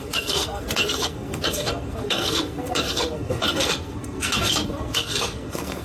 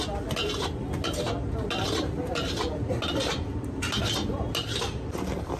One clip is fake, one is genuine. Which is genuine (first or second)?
second